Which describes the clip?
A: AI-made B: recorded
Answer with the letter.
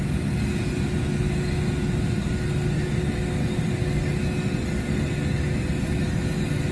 B